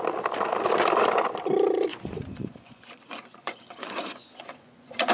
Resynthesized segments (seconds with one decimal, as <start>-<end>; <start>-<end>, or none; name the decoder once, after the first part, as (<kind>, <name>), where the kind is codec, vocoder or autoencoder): 1.9-5.1 (vocoder, Vocos)